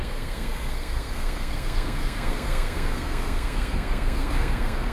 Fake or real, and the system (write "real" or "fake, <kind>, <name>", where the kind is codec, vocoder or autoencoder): fake, codec, SNAC